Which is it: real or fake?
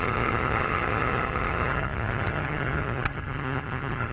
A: fake